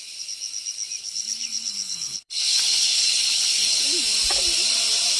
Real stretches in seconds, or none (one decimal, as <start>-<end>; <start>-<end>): 0.0-1.0; 3.8-5.2